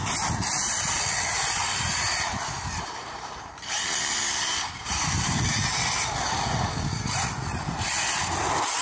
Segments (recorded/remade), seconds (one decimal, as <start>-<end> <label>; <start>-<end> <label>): 0.0-3.0 recorded; 3.0-5.3 remade; 5.3-8.8 recorded